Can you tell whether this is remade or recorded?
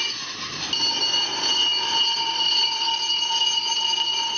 recorded